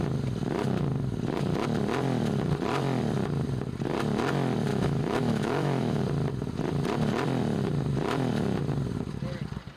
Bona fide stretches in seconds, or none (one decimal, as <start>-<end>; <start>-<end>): 0.0-4.7; 6.0-9.8